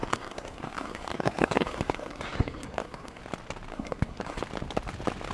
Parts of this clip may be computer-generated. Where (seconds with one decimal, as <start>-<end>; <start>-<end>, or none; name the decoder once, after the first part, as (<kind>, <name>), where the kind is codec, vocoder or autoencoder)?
0.0-3.2 (codec, SNAC); 3.7-4.4